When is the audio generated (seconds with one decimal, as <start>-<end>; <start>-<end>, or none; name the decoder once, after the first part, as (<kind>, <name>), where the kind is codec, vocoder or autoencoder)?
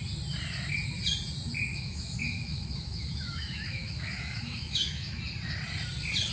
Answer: 1.7-5.2 (autoencoder, DAC-VAE)